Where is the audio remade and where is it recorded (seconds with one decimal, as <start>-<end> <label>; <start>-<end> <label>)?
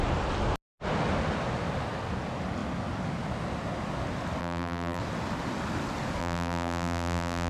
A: 0.0-4.4 recorded; 4.4-5.0 remade; 5.0-6.2 recorded; 6.2-7.5 remade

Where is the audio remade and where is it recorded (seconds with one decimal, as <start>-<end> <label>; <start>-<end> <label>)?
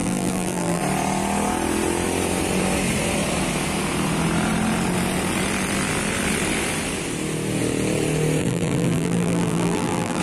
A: 0.0-0.8 remade; 0.8-8.4 recorded; 8.4-10.2 remade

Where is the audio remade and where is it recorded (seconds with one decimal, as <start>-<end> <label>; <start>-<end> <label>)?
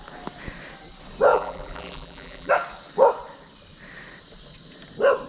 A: 0.0-1.3 recorded; 1.3-2.5 remade; 2.5-5.3 recorded